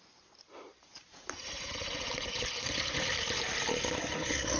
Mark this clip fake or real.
fake